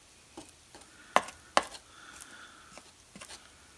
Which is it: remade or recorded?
recorded